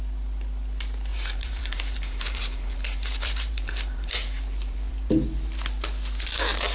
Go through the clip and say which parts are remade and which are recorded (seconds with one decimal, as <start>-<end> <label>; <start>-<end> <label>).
0.0-1.1 recorded; 1.1-5.1 remade; 5.1-6.7 recorded